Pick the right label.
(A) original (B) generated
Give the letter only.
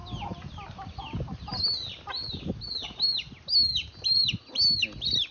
A